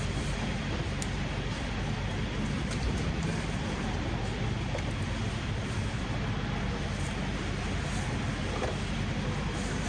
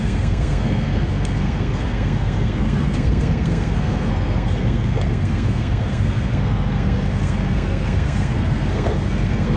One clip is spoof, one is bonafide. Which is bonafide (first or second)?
first